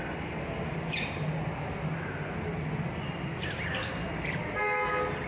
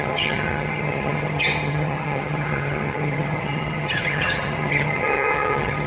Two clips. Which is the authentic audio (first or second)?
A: first